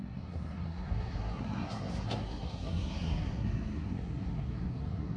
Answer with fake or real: fake